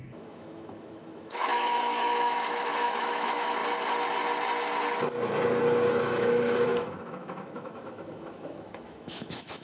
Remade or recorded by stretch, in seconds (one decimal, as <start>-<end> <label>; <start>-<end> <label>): 0.0-3.6 remade; 3.6-5.9 recorded; 5.9-9.6 remade